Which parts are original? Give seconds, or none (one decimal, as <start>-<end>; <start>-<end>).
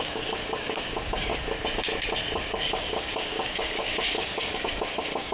1.3-2.4